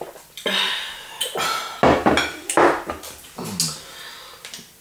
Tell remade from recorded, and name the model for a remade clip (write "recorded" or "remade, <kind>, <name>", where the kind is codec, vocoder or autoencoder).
recorded